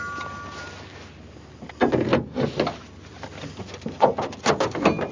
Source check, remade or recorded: recorded